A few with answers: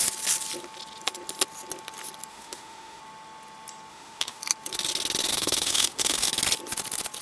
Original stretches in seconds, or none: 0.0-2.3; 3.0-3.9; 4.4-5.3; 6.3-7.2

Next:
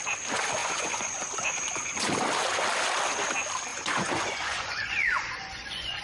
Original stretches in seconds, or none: 0.0-0.6; 2.1-3.7

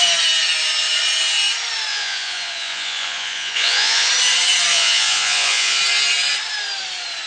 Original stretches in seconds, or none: 0.0-1.9; 4.1-4.7; 5.8-7.3

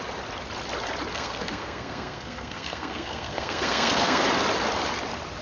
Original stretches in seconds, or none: 0.0-1.1; 4.2-5.4

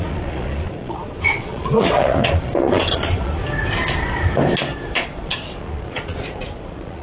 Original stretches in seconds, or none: 3.4-4.9

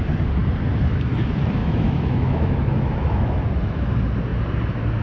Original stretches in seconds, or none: 0.0-1.6; 3.9-5.0

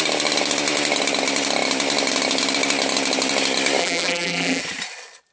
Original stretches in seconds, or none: 0.0-3.8; 4.6-5.3